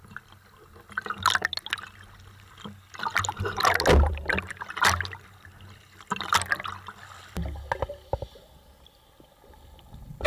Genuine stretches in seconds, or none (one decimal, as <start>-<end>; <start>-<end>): 0.0-10.3